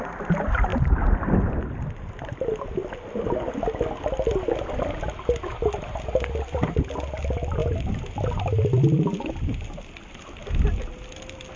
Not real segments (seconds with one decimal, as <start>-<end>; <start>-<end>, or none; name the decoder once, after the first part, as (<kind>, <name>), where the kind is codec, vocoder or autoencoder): none